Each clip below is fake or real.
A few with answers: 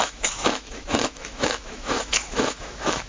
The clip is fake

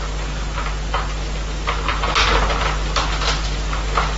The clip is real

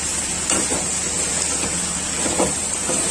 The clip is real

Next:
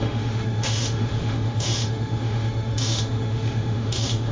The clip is fake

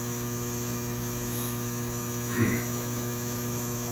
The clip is fake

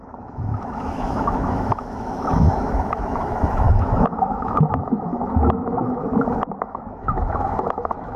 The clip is fake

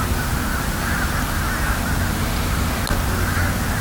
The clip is real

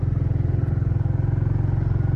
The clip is real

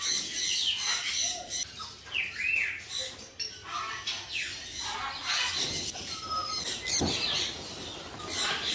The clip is real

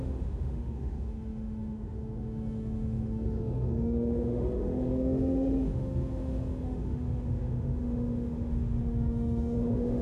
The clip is fake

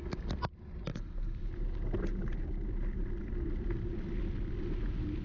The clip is real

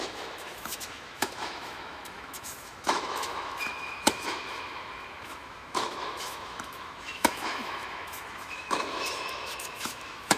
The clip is fake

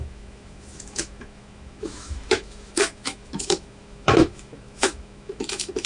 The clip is fake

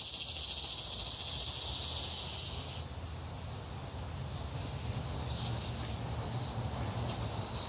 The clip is real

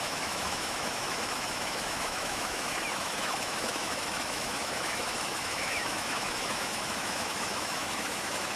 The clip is fake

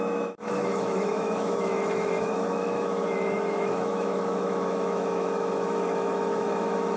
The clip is fake